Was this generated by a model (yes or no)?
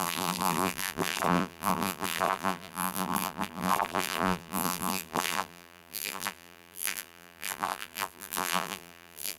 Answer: yes